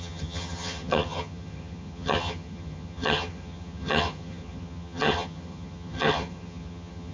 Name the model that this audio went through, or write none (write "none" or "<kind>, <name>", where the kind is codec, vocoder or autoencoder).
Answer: vocoder, HiFi-GAN